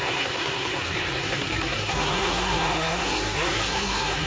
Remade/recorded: remade